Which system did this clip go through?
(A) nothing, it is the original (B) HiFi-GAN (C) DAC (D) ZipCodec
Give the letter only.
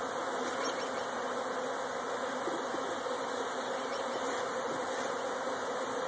A